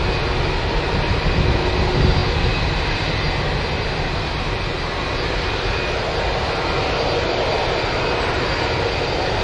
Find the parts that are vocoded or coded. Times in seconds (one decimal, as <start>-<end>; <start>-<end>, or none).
none